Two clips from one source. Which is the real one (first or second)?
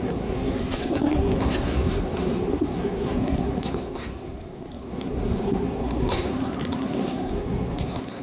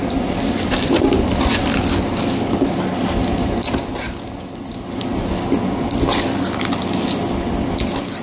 second